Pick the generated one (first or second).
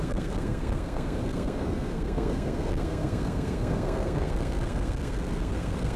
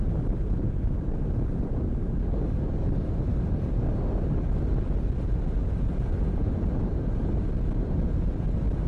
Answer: first